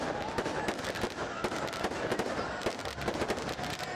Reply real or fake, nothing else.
real